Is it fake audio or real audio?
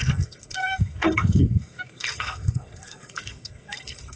fake